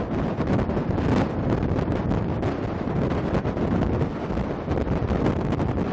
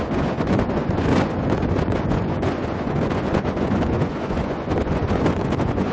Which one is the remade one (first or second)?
second